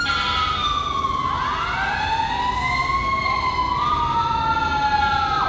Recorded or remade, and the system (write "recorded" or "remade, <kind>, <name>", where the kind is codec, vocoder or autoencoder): recorded